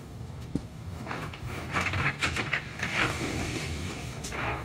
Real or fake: fake